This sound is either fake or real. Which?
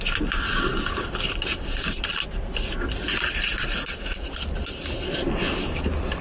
real